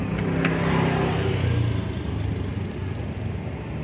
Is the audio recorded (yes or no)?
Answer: yes